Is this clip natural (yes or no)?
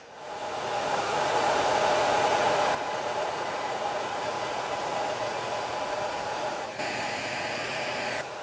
no